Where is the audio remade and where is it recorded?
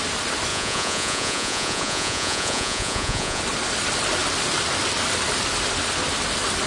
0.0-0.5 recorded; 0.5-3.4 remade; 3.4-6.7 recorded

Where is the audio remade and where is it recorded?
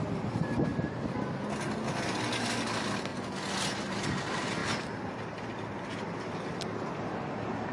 0.0-7.7 recorded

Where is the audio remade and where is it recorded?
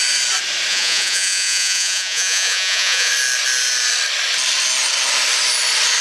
0.0-0.7 recorded; 0.7-3.1 remade; 3.1-6.0 recorded